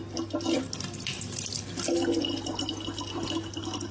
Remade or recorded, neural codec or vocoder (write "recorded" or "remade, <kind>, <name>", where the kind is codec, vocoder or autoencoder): recorded